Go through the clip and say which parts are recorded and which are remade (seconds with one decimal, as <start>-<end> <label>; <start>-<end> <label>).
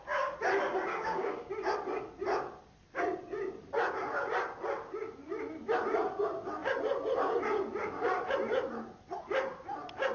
0.0-0.9 recorded; 0.9-1.5 remade; 1.5-10.1 recorded